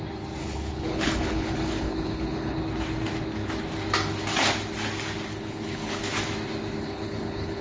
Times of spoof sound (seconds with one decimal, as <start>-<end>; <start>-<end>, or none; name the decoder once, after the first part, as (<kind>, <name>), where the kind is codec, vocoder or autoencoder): 0.4-2.6 (codec, HILCodec); 5.3-6.0; 6.8-7.6